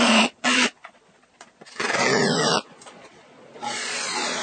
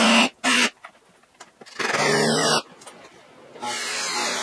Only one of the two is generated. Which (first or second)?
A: first